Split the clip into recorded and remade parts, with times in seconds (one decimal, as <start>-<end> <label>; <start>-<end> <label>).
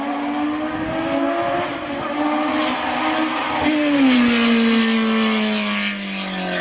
0.0-6.6 recorded